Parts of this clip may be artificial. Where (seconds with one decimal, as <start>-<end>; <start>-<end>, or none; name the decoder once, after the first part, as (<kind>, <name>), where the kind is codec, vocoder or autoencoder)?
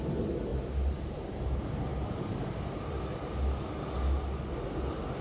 0.5-3.3 (vocoder, BigVGAN v2)